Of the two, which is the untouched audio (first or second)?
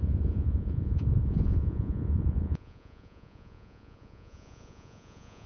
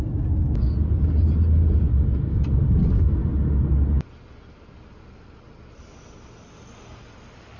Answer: second